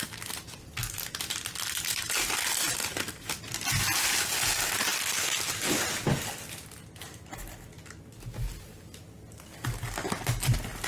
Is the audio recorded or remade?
recorded